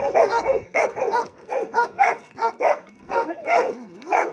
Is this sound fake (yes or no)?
yes